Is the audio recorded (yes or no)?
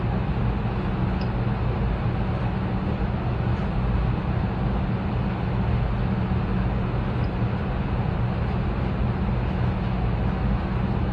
yes